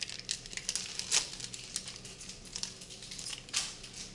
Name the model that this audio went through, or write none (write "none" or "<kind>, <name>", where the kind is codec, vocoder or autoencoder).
none